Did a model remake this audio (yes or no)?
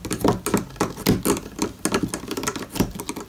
no